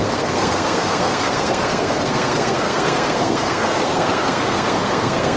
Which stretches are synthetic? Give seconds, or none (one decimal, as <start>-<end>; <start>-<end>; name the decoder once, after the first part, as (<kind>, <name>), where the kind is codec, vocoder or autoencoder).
0.0-5.4 (codec, SNAC)